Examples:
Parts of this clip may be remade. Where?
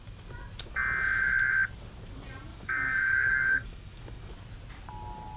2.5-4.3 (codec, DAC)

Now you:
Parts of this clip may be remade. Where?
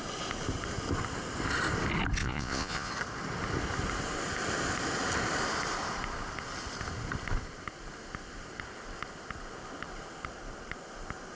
2.2-2.9 (vocoder, Vocos)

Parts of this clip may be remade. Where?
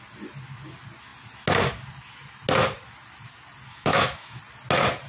3.7-4.4 (autoencoder, DAC-VAE)